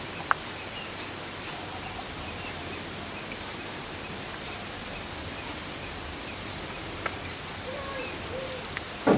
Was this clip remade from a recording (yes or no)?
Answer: no